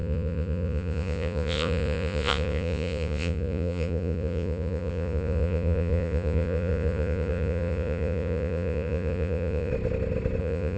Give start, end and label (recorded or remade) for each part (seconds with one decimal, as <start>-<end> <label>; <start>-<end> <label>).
0.0-9.7 remade; 9.7-10.4 recorded; 10.4-10.8 remade